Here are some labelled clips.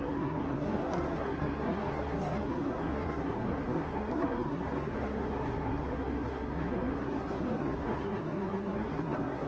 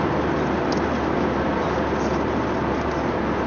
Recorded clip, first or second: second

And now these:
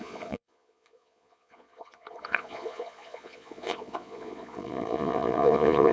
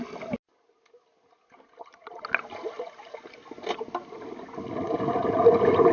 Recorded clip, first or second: second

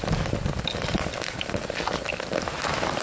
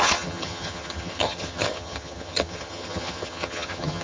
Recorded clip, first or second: first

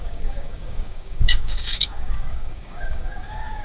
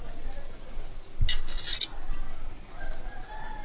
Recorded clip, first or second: second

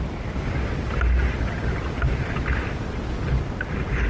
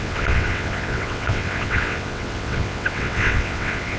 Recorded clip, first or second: first